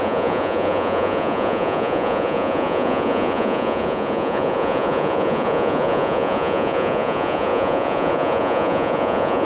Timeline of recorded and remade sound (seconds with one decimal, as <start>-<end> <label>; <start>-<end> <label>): 0.0-9.4 remade